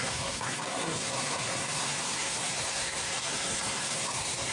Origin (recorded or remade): remade